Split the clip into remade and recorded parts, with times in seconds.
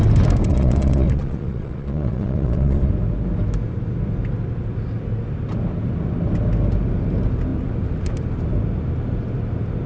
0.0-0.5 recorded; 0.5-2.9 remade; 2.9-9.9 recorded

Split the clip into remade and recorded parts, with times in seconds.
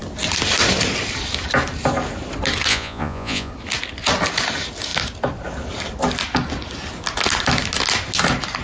0.0-2.7 recorded; 2.7-3.5 remade; 3.5-8.6 recorded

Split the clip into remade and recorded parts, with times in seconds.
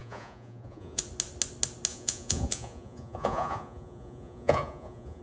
0.0-1.0 remade; 1.0-1.9 recorded; 1.9-5.2 remade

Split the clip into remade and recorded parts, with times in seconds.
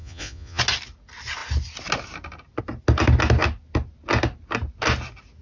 0.0-0.6 remade; 0.6-5.4 recorded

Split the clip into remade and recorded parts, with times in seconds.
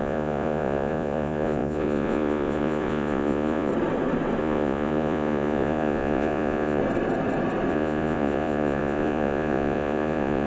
0.0-3.7 remade; 3.7-4.4 recorded; 4.4-6.8 remade; 6.8-7.7 recorded; 7.7-10.5 remade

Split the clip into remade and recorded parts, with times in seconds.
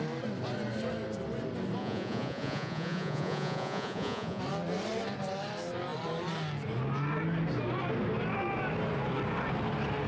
0.0-1.8 recorded; 1.8-4.4 remade; 4.4-10.1 recorded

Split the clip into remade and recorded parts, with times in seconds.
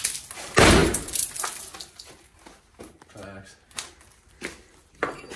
0.0-5.4 recorded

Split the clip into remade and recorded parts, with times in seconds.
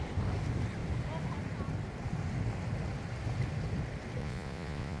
0.0-4.2 recorded; 4.2-5.0 remade